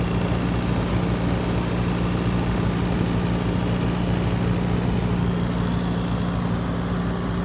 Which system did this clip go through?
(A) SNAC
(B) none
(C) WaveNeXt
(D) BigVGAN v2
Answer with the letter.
D